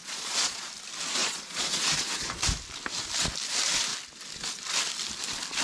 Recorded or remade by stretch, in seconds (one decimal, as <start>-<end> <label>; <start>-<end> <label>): 0.0-0.7 remade; 0.7-1.2 recorded; 1.2-2.4 remade; 2.4-5.6 recorded